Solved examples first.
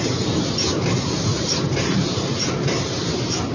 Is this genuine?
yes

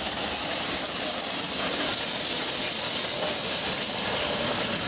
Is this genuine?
yes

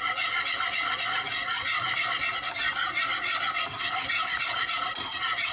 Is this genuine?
yes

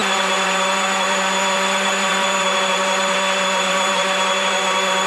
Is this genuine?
no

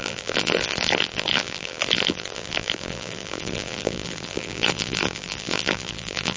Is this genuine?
no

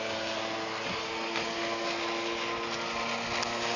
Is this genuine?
yes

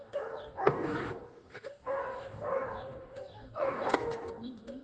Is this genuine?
no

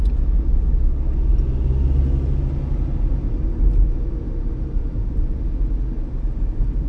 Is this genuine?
yes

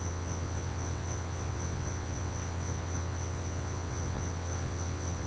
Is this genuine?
no